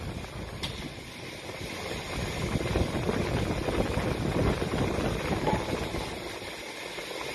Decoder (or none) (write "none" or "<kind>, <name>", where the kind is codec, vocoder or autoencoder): none